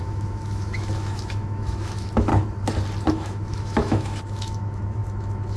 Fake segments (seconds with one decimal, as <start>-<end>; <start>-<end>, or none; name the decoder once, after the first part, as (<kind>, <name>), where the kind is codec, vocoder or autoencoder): 0.0-2.3 (autoencoder, DAC-VAE); 3.1-5.6